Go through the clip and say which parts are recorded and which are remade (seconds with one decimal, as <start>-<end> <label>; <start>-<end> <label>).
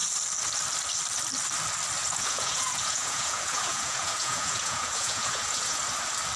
0.0-2.0 recorded; 2.0-5.8 remade; 5.8-6.4 recorded